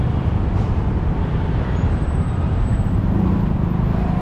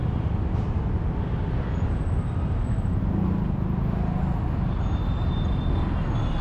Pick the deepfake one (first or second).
first